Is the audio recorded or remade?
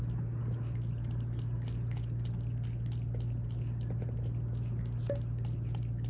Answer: recorded